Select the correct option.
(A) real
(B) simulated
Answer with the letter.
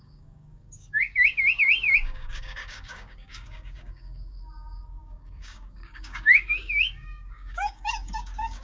B